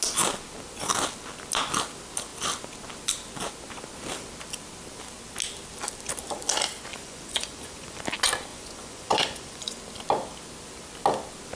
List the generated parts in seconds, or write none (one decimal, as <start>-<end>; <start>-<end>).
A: 6.9-8.0; 8.5-9.8